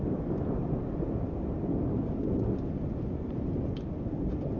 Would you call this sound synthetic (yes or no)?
no